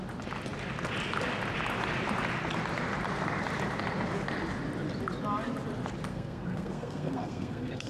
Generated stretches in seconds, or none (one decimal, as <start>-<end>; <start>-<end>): 6.1-7.9